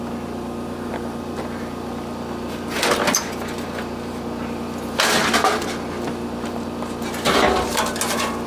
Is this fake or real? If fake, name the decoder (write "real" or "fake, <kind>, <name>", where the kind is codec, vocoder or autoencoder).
real